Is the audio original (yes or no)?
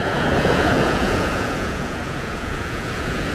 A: no